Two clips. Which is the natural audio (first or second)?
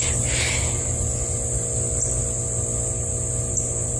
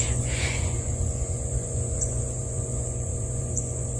first